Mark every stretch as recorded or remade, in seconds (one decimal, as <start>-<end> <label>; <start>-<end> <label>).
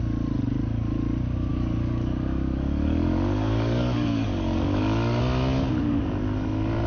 0.0-1.5 recorded; 1.5-5.2 remade; 5.2-6.9 recorded